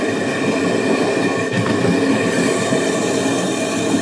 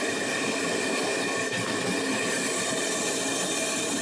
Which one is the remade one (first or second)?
second